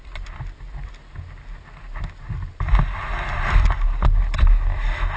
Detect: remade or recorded recorded